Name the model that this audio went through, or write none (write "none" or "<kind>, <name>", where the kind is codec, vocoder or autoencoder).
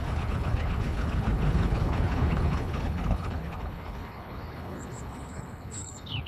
codec, HILCodec